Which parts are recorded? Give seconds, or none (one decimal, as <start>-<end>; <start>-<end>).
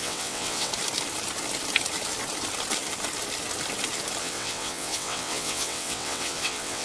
0.7-4.2